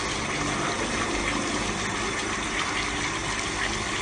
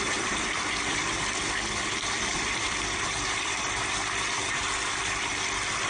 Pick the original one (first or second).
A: first